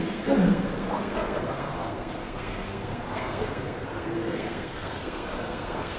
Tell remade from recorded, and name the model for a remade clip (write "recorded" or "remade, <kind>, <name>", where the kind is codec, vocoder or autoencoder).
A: remade, codec, SNAC